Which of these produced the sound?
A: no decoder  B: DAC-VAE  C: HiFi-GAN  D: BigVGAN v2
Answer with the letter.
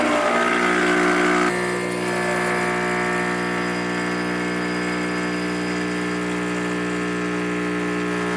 A